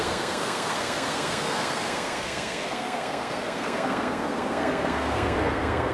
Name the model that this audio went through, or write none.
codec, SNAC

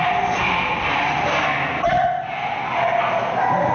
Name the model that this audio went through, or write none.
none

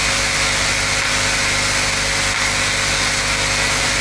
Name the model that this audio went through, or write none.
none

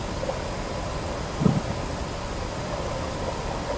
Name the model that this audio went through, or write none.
none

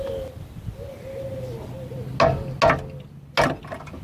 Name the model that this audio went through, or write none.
none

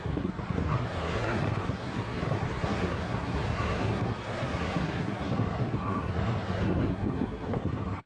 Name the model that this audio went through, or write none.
codec, SNAC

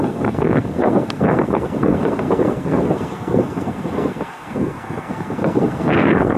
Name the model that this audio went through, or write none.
codec, SNAC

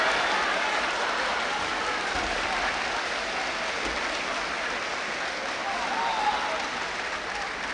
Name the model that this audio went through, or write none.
none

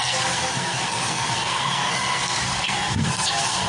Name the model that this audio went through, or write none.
codec, SNAC